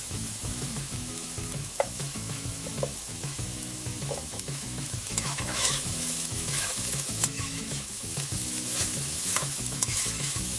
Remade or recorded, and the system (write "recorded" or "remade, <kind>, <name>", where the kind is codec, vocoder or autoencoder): remade, autoencoder, DAC-VAE